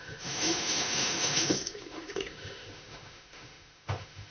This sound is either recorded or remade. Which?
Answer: remade